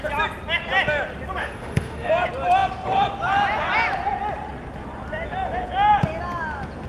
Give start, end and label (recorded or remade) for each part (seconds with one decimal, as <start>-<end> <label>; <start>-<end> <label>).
0.0-1.4 recorded; 1.4-2.1 remade; 2.1-6.9 recorded